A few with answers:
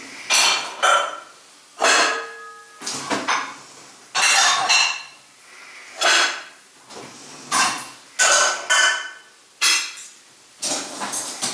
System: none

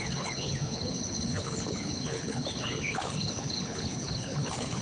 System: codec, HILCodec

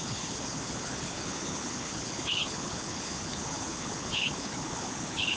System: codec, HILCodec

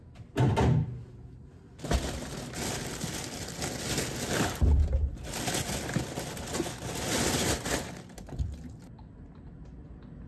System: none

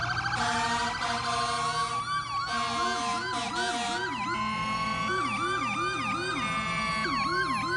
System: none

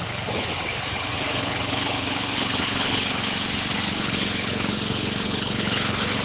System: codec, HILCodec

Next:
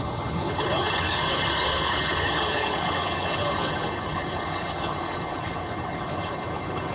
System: codec, HILCodec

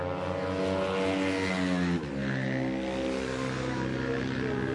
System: none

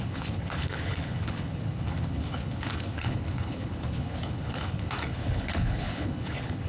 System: codec, HILCodec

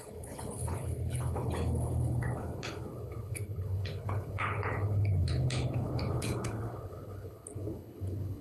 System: codec, HILCodec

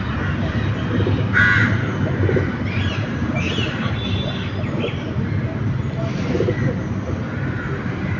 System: none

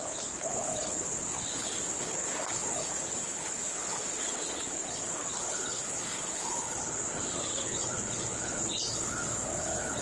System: codec, HILCodec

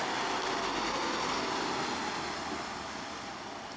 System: none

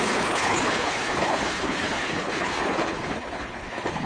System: codec, HILCodec